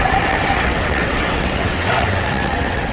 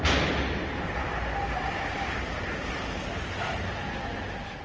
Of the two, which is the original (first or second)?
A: second